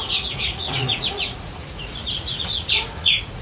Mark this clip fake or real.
fake